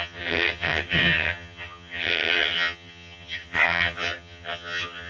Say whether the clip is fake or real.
fake